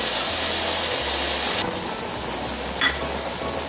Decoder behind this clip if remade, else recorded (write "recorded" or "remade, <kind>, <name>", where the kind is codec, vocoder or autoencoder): recorded